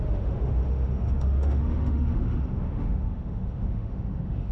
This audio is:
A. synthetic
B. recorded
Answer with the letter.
A